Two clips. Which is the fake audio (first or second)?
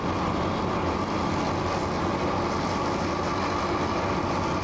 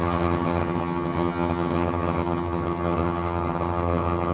second